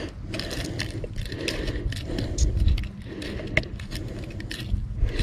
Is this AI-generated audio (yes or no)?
no